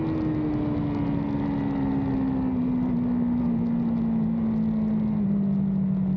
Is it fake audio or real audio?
real